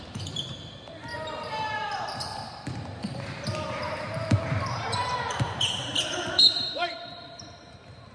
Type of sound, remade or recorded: remade